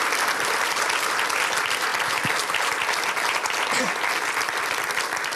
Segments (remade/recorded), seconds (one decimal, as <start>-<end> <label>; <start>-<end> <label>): 0.0-5.4 recorded